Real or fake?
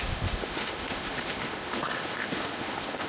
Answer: fake